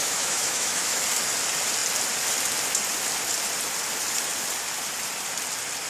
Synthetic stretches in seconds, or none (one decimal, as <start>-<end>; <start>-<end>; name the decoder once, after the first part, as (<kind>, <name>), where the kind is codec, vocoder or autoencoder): 0.0-1.0 (autoencoder, DAC-VAE)